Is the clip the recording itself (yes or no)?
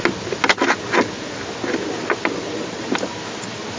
yes